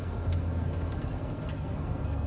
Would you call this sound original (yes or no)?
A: no